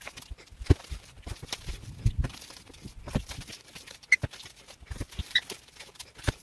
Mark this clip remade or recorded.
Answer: remade